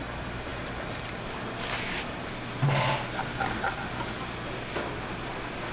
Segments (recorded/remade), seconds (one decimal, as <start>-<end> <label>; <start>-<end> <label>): 0.0-5.7 recorded